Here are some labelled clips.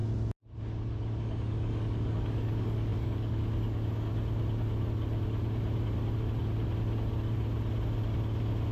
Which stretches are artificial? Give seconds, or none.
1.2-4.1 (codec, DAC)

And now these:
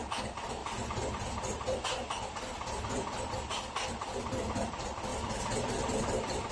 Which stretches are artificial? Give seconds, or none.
0.0-0.6 (vocoder, BigVGAN v2); 3.3-5.1; 5.6-6.5

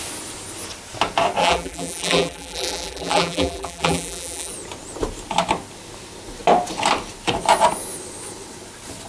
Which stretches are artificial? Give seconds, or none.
1.4-4.5 (vocoder, BigVGAN v2)